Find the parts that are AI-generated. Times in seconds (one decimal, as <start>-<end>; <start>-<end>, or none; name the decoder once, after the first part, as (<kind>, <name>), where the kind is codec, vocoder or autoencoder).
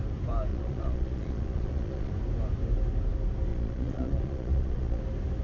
0.5-2.1 (vocoder, Vocos); 3.5-5.0